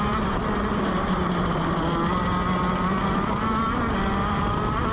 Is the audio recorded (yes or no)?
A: yes